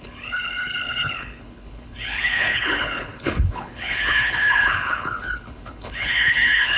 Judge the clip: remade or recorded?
remade